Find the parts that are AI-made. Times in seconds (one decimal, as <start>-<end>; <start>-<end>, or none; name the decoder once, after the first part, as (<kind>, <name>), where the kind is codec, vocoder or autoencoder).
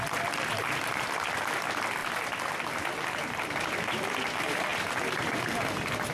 2.0-3.6 (vocoder, BigVGAN v2); 4.7-5.4